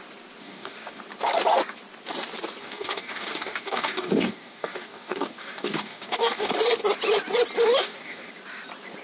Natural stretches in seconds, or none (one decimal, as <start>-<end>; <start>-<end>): 0.0-0.4; 1.0-2.6; 6.5-7.8; 8.3-9.0